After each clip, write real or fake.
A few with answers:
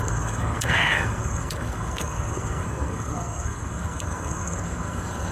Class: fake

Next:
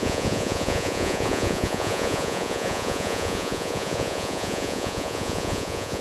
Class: fake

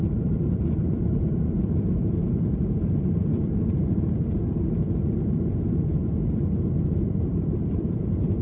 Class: fake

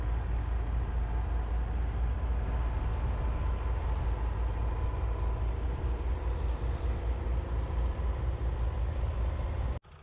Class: real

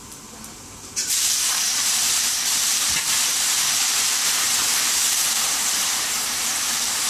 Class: fake